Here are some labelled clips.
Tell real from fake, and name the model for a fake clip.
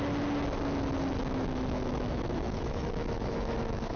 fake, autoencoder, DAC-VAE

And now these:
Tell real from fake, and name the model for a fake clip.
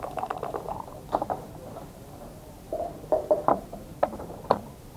fake, vocoder, BigVGAN v2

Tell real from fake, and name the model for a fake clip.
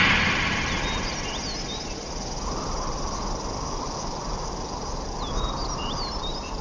real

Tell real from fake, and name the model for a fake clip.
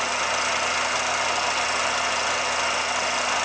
real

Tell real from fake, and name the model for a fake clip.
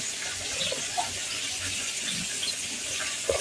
fake, vocoder, Vocos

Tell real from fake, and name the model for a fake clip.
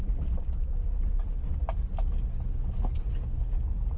real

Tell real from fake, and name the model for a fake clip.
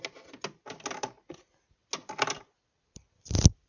real